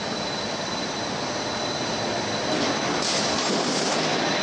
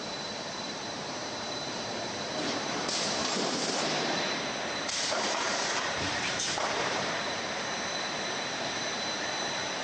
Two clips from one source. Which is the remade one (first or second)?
second